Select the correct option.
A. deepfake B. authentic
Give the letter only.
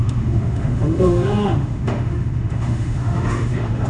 A